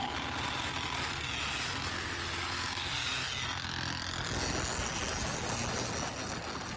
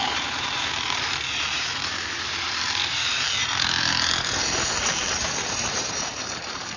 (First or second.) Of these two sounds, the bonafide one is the first